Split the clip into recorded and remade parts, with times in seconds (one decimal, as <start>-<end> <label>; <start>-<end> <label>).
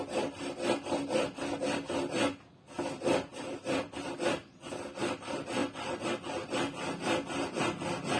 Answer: 0.0-3.3 recorded; 3.3-4.1 remade; 4.1-5.6 recorded; 5.6-6.1 remade; 6.1-8.2 recorded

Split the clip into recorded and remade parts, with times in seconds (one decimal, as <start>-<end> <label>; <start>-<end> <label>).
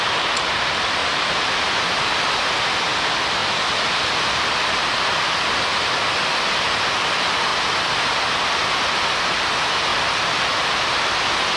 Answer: 0.0-3.4 remade; 3.4-6.9 recorded; 6.9-7.5 remade; 7.5-8.7 recorded; 8.7-9.9 remade; 9.9-10.6 recorded; 10.6-11.6 remade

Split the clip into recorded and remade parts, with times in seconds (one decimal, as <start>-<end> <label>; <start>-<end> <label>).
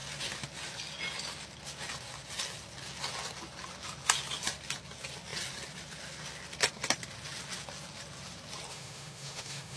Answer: 0.0-8.7 recorded; 8.7-9.8 remade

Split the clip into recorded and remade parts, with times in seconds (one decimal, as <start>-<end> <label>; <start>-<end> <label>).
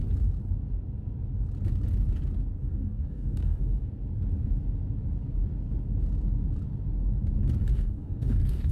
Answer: 0.0-2.6 recorded; 2.6-3.9 remade; 3.9-7.7 recorded; 7.7-8.7 remade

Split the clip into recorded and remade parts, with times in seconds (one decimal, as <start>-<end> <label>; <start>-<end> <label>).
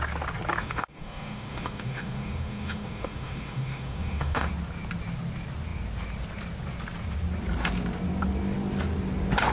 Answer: 0.0-0.6 recorded; 0.6-4.5 remade; 4.5-9.5 recorded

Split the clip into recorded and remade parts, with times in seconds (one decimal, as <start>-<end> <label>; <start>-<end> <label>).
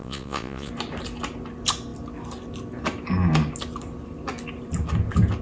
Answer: 0.0-0.7 remade; 0.7-5.4 recorded